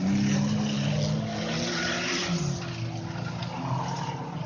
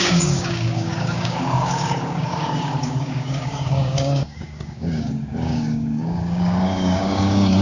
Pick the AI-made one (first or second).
second